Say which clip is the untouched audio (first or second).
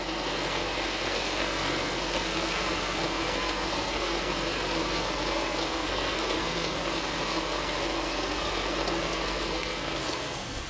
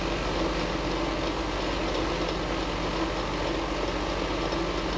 second